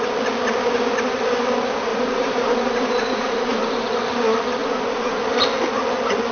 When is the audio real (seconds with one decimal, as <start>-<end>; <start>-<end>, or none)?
0.0-1.9; 3.9-4.6; 5.2-6.3